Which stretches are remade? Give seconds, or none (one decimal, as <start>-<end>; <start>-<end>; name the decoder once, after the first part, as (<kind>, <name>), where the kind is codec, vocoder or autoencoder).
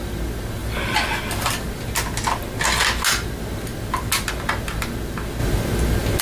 none